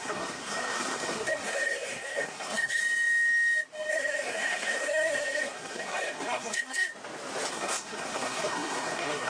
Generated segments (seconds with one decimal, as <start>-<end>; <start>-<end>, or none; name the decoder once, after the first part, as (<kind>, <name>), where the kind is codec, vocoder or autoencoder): 0.0-2.8 (codec, SNAC); 3.9-6.9; 7.5-9.3